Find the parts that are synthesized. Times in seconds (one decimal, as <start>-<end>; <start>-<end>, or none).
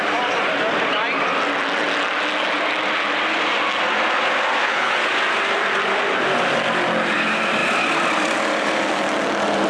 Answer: 4.6-5.1